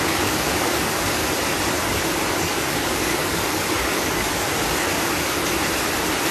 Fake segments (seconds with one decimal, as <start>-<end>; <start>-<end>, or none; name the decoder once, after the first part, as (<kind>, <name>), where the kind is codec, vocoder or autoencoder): 0.0-1.2 (codec, DAC); 2.4-5.4